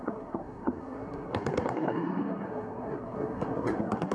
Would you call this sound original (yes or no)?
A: no